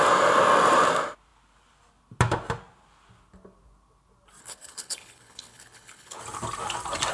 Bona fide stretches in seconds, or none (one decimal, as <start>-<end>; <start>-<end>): 0.0-4.4; 6.2-7.1